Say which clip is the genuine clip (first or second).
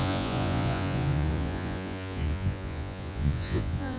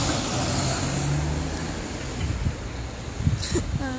second